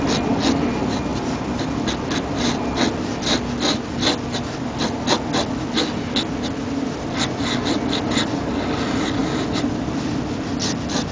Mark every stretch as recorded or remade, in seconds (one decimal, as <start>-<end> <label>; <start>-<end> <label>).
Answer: 0.0-11.1 recorded